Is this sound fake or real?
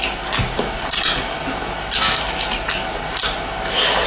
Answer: real